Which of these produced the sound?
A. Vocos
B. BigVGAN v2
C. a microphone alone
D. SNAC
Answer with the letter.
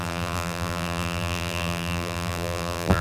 B